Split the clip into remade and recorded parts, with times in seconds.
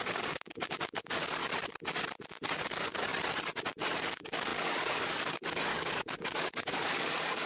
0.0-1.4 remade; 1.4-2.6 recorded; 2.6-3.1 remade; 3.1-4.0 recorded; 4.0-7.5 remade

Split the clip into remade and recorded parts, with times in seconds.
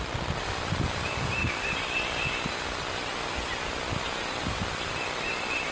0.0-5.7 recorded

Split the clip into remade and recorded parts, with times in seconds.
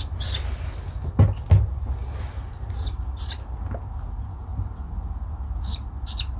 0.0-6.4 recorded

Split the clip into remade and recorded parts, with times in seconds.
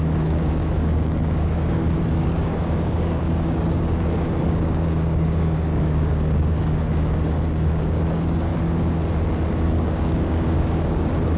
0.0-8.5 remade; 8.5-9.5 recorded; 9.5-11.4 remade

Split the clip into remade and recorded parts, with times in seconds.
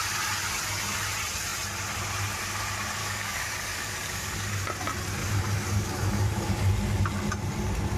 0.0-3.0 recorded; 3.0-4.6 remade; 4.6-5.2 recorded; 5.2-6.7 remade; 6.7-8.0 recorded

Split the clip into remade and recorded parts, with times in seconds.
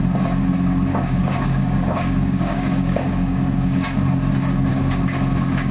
0.0-0.9 recorded; 0.9-4.3 remade; 4.3-4.7 recorded; 4.7-5.7 remade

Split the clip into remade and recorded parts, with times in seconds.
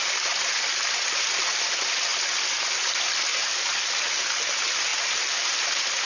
0.0-3.3 recorded; 3.3-3.9 remade; 3.9-6.1 recorded